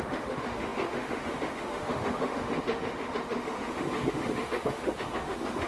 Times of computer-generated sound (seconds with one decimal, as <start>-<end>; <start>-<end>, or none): 0.0-5.7